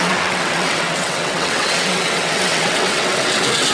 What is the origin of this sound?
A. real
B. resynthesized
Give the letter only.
B